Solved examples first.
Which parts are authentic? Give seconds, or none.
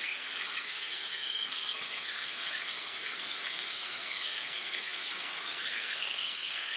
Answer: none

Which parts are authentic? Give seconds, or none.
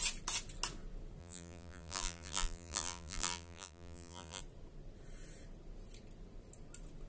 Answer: 0.0-1.2; 4.4-7.1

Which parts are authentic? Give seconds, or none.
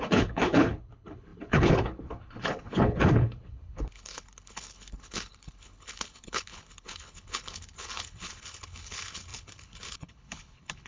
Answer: none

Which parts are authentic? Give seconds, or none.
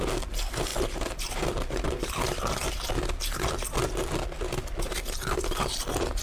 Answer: 0.0-6.2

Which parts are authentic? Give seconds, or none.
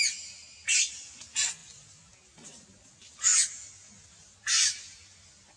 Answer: 0.0-5.6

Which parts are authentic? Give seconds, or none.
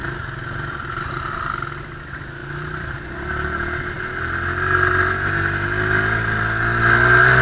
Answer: 0.0-7.4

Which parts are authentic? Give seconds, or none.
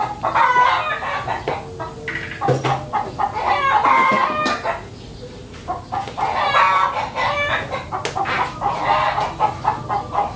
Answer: 0.0-10.4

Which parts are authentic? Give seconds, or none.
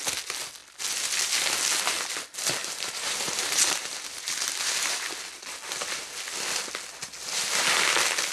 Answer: 0.0-2.6; 5.1-8.3